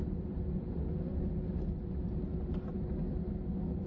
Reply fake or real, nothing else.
real